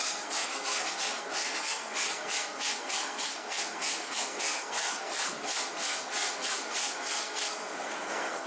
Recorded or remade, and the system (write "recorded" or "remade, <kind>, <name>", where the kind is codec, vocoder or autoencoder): remade, codec, SNAC